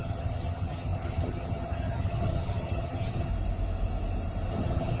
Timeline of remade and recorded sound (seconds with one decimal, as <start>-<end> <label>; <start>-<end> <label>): 0.0-3.3 remade; 3.3-4.5 recorded; 4.5-5.0 remade